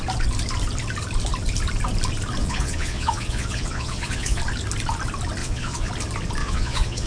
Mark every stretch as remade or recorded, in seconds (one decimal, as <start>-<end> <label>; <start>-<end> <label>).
0.0-2.4 recorded; 2.4-4.4 remade; 4.4-5.4 recorded; 5.4-5.9 remade; 5.9-6.4 recorded; 6.4-7.1 remade